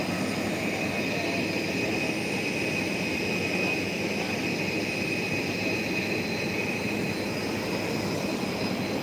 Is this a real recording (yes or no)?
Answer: yes